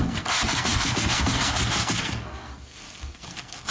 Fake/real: fake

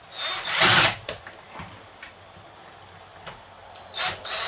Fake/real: real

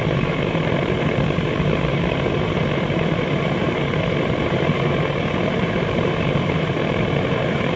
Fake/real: fake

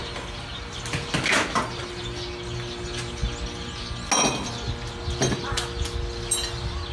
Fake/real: real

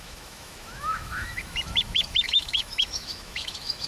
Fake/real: fake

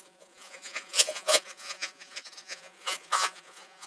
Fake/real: fake